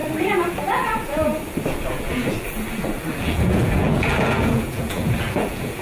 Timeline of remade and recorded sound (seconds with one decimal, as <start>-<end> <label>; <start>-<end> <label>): 0.0-0.5 recorded; 0.5-1.3 remade; 1.3-1.9 recorded; 1.9-5.8 remade